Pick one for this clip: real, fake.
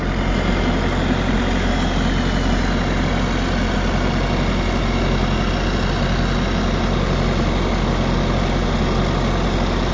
real